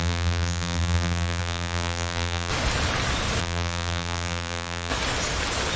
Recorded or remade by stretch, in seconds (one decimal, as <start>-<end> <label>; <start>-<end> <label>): 0.0-2.5 remade; 2.5-3.4 recorded; 3.4-4.9 remade; 4.9-5.8 recorded